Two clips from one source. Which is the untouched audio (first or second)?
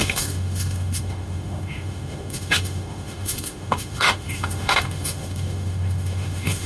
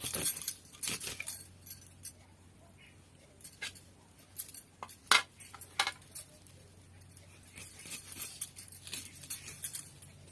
second